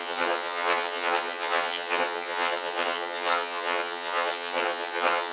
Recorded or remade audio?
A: remade